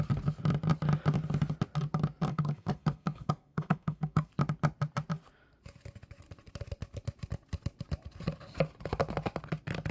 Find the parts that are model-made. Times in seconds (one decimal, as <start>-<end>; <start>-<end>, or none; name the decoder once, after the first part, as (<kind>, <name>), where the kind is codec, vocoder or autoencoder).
2.3-4.3 (codec, SNAC)